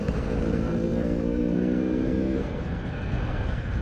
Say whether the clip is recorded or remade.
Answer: remade